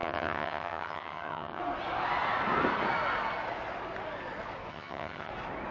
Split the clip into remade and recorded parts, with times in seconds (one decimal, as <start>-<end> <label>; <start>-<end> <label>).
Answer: 0.0-1.6 remade; 1.6-4.7 recorded; 4.7-5.3 remade; 5.3-5.7 recorded